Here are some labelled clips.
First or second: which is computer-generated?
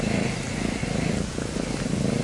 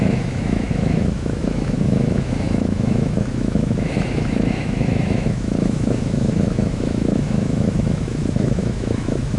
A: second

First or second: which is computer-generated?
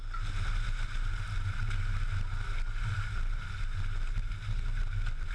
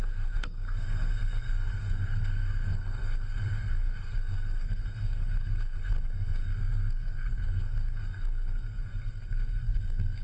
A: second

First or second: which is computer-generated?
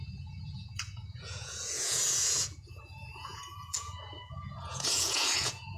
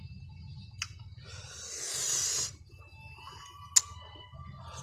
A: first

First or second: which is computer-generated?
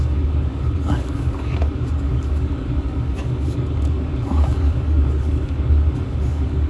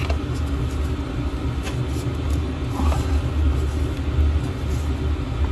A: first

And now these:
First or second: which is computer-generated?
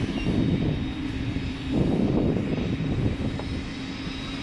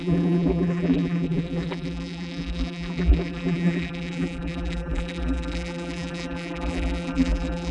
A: second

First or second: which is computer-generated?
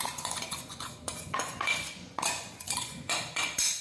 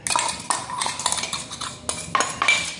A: first